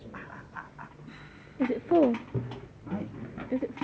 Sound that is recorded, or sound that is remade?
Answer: recorded